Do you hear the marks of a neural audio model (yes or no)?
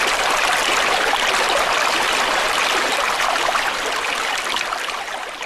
no